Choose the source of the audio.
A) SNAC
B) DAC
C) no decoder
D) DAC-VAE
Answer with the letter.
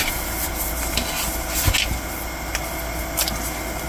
C